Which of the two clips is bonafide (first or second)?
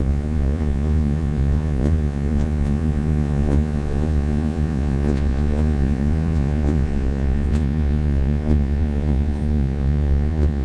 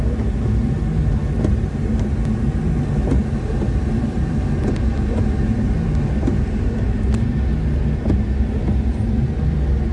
second